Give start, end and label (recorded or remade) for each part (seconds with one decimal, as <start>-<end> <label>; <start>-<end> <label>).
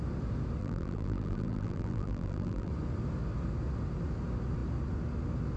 0.0-0.6 recorded; 0.6-2.7 remade; 2.7-5.6 recorded